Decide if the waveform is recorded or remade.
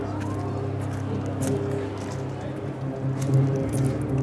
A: recorded